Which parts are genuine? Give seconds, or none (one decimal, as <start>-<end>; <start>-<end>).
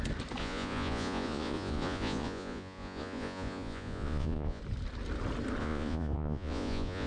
0.0-0.4; 4.6-5.6